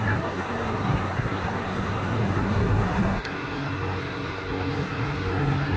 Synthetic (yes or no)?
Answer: yes